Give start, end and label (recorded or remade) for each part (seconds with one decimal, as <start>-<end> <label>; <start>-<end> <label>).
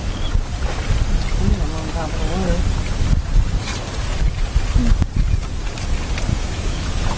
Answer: 0.0-6.3 recorded; 6.3-7.2 remade